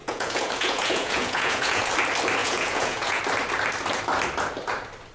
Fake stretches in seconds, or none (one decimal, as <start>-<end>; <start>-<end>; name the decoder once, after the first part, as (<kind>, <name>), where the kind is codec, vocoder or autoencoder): 0.0-1.9 (vocoder, Vocos); 2.4-3.2